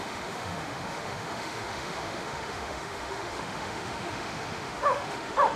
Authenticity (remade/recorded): remade